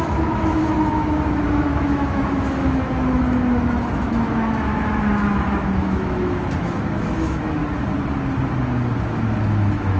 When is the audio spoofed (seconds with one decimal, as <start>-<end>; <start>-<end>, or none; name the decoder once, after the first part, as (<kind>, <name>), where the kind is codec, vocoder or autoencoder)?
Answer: 0.0-7.6 (autoencoder, DAC-VAE); 9.0-10.0